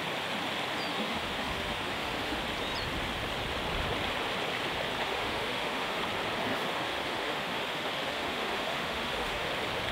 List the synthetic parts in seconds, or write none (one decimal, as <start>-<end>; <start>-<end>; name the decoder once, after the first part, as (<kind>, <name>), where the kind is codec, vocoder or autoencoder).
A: 0.9-2.4 (autoencoder, DAC-VAE); 5.0-6.0; 6.5-9.5